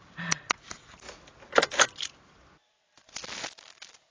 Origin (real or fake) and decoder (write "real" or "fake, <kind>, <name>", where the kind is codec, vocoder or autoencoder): real